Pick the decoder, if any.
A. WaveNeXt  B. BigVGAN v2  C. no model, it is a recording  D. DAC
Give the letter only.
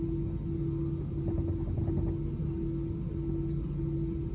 C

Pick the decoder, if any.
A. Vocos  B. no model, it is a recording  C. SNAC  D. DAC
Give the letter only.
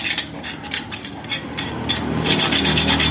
B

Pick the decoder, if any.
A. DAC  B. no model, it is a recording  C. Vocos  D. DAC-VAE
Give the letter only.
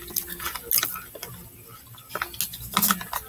B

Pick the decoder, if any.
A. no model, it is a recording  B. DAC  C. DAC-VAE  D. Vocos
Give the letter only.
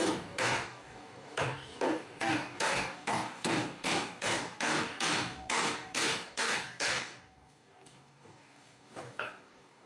B